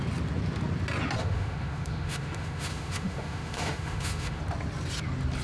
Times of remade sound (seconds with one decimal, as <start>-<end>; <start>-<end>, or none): 1.2-4.4